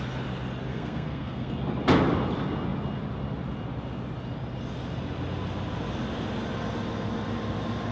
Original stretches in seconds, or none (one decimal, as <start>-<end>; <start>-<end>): 0.0-0.7; 1.5-7.9